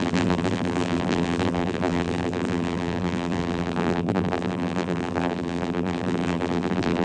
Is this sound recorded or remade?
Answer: remade